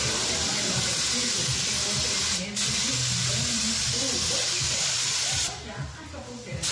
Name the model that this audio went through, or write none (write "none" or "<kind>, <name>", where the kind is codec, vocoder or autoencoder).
none